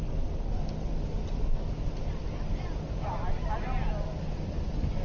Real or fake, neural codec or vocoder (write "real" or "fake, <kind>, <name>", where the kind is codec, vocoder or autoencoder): real